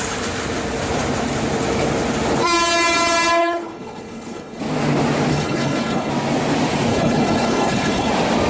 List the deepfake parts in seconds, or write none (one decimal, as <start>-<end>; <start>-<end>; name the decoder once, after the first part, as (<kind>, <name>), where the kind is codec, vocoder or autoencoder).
3.4-4.6 (codec, HILCodec); 5.3-6.1; 6.9-8.1